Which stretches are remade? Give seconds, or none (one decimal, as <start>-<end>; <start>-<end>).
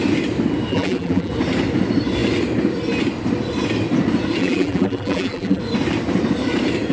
0.7-1.3; 4.4-5.6